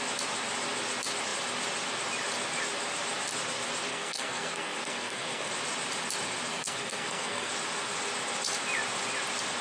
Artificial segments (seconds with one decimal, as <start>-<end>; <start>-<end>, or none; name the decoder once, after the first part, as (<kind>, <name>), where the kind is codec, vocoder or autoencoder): 3.9-5.5 (codec, SNAC); 6.5-7.5